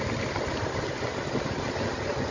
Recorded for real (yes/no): yes